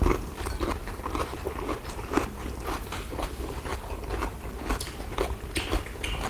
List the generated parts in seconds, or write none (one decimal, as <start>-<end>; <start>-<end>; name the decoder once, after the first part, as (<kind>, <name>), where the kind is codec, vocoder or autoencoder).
none